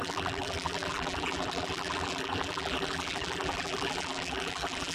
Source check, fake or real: fake